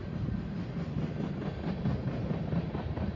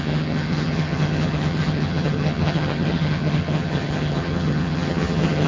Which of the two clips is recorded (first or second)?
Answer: first